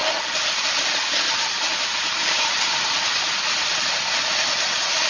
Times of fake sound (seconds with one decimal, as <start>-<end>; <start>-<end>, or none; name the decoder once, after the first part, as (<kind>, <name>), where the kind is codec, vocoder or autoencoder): none